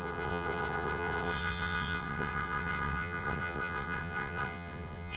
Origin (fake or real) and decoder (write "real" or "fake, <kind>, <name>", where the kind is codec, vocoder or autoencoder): fake, vocoder, WaveNeXt